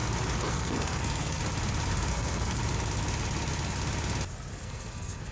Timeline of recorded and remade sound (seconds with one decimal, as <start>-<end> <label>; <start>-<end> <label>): 0.0-0.5 recorded; 0.5-1.4 remade; 1.4-2.1 recorded; 2.1-2.6 remade; 2.6-4.5 recorded; 4.5-5.3 remade